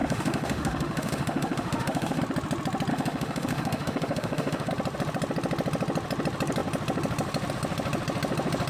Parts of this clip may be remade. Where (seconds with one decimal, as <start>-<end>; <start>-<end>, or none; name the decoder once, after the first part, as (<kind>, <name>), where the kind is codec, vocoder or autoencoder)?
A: 0.0-2.2 (autoencoder, DAC-VAE); 2.9-4.7